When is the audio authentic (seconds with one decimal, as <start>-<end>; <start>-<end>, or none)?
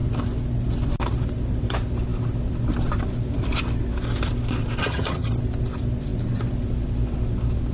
0.0-4.8; 5.3-7.7